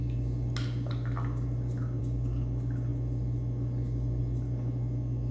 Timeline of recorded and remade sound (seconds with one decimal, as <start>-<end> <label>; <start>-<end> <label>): 0.0-5.3 recorded